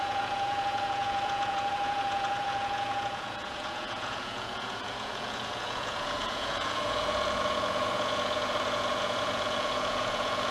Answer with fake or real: fake